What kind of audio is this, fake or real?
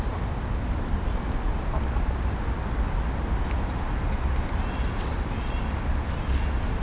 real